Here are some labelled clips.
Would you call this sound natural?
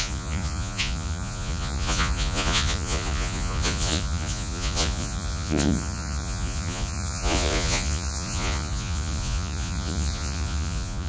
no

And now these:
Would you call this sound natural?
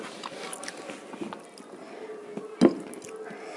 yes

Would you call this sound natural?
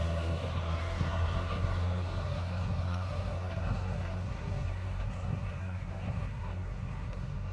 no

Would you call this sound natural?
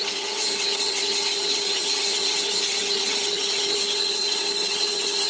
no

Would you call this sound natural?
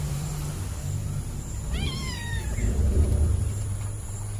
no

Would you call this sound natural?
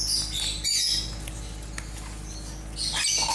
yes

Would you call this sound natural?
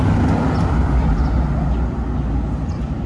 yes